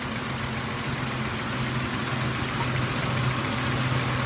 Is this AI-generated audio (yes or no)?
no